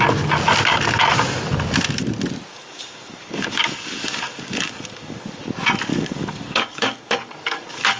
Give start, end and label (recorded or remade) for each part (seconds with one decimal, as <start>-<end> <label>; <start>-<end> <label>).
0.0-2.5 recorded; 2.5-5.4 remade; 5.4-5.9 recorded; 5.9-8.0 remade